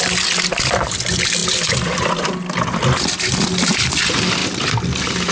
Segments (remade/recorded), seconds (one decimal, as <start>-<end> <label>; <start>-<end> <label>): 0.0-5.3 recorded